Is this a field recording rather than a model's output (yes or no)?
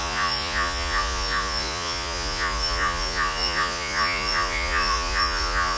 no